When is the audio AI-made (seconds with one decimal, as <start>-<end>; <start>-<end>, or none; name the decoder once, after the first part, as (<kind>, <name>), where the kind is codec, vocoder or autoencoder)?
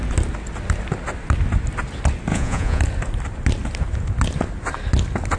2.3-2.8 (vocoder, Vocos)